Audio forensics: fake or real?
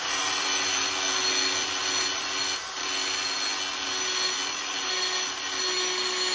real